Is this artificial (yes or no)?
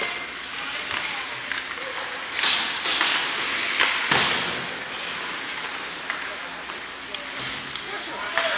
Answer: no